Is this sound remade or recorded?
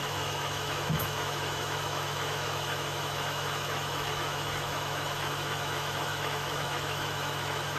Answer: remade